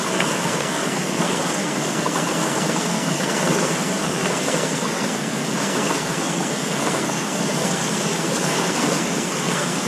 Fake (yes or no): yes